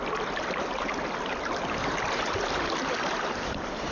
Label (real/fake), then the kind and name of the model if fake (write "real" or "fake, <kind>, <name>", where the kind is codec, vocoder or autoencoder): fake, vocoder, BigVGAN v2